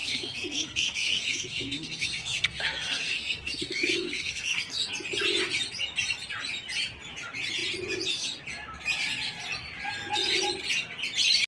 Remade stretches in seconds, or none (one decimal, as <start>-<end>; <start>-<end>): 0.0-4.9